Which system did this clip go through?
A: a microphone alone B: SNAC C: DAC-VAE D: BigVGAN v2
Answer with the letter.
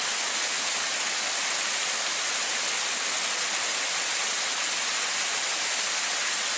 A